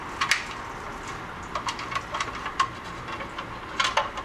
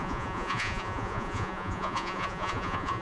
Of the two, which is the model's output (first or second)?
second